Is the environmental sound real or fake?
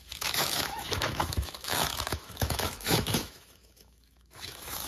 fake